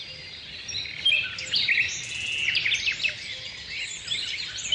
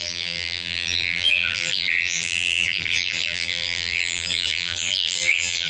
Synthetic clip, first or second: second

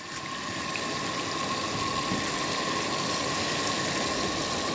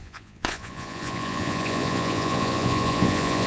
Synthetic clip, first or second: second